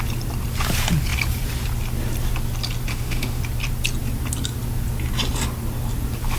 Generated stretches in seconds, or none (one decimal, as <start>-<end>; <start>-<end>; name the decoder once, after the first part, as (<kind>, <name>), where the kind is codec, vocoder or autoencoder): 2.9-3.4 (autoencoder, DAC-VAE)